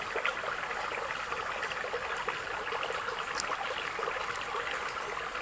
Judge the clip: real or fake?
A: real